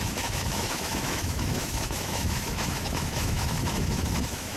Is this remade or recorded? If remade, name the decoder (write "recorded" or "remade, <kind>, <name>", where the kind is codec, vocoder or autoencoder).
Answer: remade, autoencoder, DAC-VAE